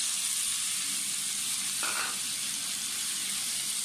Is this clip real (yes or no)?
yes